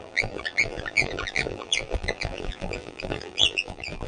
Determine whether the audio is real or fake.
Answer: fake